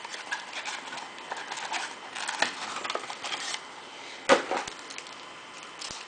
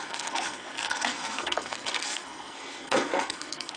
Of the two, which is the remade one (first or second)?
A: second